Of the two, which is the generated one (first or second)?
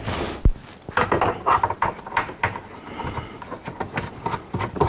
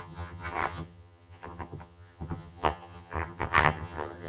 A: second